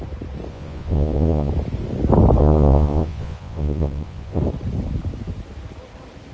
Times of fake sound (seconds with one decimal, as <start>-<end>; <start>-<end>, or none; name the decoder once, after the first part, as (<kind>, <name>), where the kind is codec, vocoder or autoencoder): 0.5-1.5 (vocoder, Vocos); 2.4-4.4